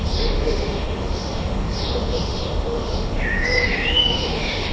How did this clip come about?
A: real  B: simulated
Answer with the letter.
B